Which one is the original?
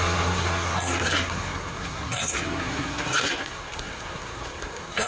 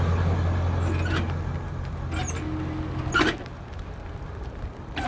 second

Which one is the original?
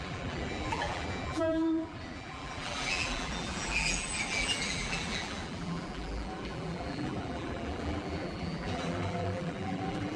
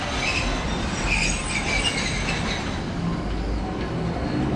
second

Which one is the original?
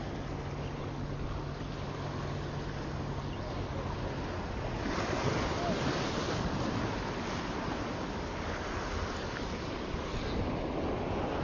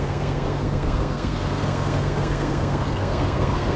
first